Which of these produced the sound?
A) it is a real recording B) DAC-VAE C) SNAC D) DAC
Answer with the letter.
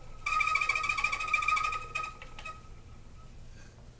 A